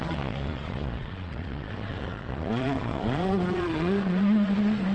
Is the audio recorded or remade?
remade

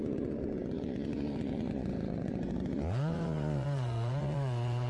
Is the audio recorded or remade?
remade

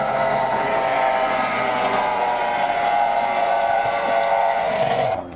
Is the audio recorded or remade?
remade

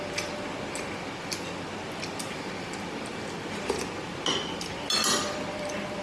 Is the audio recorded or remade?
recorded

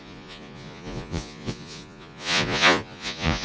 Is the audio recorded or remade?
remade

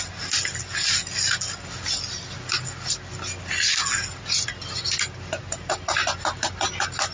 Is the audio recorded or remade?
recorded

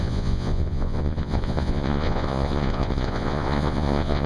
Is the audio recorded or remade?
remade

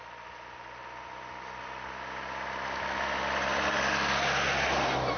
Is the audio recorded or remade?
recorded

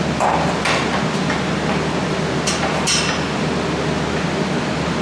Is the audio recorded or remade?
recorded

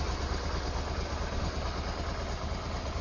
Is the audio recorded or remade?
recorded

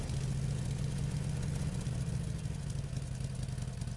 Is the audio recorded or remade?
recorded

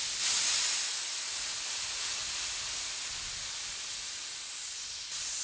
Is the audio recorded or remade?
recorded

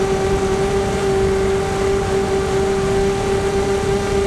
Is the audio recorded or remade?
recorded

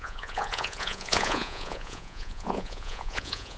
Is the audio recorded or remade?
remade